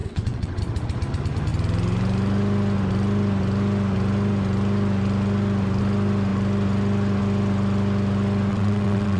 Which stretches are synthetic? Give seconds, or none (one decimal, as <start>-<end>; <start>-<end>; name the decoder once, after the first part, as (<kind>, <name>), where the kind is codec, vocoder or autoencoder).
0.0-0.6 (vocoder, WaveNeXt); 8.5-9.2